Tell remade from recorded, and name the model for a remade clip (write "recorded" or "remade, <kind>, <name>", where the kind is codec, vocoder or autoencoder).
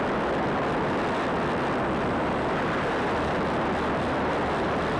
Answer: recorded